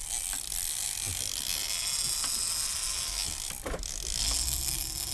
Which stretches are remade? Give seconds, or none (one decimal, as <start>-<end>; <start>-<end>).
none